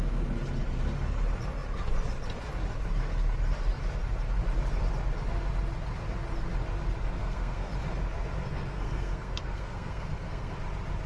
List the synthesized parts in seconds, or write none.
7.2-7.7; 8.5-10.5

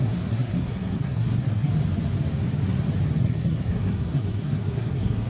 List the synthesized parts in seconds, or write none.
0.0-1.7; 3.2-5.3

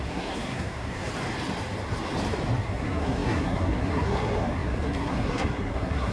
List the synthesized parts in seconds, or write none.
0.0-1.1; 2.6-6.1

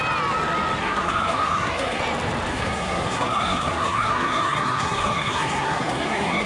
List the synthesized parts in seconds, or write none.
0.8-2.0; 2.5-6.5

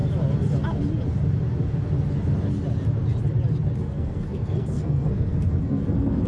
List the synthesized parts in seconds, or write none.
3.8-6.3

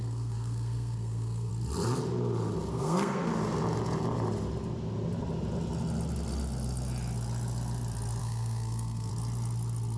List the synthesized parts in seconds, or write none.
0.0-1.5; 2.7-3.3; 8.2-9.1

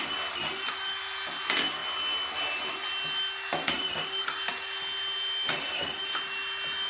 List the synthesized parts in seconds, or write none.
none

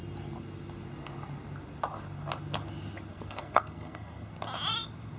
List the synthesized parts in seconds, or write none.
3.1-4.3